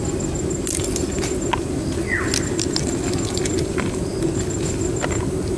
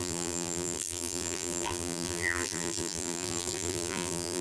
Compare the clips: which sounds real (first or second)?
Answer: first